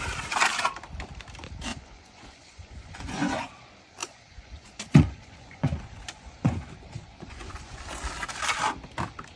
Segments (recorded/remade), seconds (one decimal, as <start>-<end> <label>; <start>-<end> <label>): 0.0-1.7 recorded; 1.7-3.5 remade; 3.5-4.0 recorded; 4.0-7.8 remade; 7.8-9.4 recorded